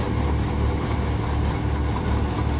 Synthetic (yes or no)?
no